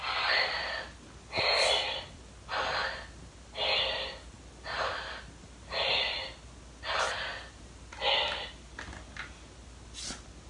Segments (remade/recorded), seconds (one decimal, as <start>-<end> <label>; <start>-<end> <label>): 0.0-10.5 recorded